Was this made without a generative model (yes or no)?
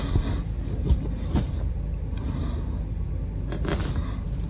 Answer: yes